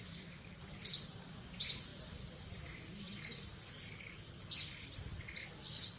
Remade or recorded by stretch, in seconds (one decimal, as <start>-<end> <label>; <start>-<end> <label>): 0.0-6.0 recorded